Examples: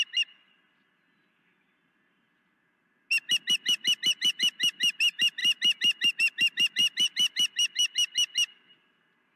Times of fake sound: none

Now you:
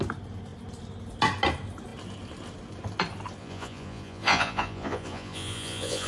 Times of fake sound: 3.4-6.1 (vocoder, Vocos)

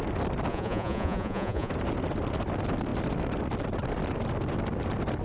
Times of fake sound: 0.5-1.7 (vocoder, Vocos)

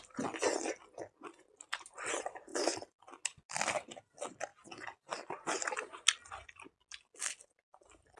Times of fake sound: none

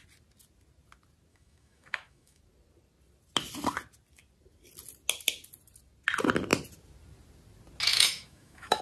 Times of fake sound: 1.3-2.4 (autoencoder, DAC-VAE); 7.9-8.8

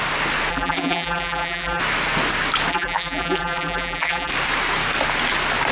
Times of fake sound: 0.5-1.8 (vocoder, BigVGAN v2); 2.7-4.3